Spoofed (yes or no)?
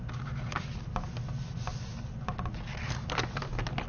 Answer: no